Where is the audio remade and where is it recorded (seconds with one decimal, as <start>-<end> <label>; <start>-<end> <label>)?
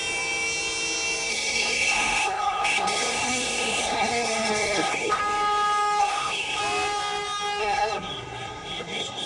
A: 0.0-1.3 recorded; 1.3-5.2 remade; 5.2-6.0 recorded; 6.0-6.6 remade; 6.6-7.6 recorded; 7.6-9.3 remade